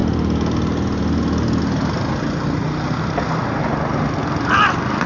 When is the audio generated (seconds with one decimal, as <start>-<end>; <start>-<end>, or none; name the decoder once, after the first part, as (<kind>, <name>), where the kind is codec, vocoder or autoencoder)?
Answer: none